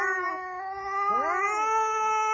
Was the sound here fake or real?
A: real